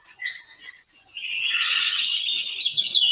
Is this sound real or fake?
fake